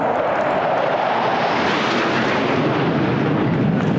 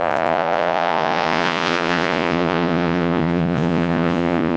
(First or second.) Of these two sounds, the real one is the first